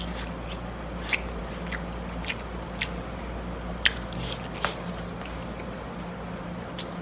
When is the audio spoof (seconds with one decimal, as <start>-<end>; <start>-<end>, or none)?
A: none